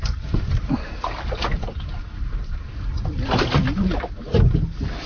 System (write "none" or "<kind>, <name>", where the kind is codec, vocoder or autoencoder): none